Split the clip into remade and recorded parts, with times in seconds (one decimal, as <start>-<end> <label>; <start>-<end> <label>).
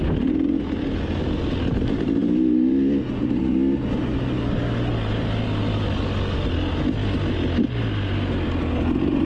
0.0-9.2 recorded